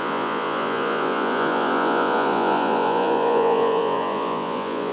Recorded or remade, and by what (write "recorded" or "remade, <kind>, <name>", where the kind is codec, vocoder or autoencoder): remade, vocoder, Vocos